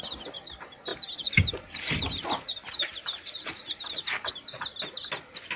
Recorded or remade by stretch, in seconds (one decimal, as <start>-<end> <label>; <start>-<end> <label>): 0.0-0.9 recorded; 0.9-4.3 remade; 4.3-5.6 recorded